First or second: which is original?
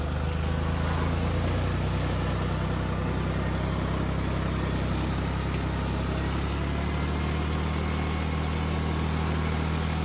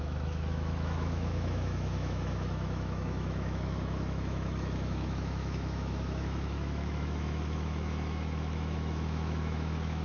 first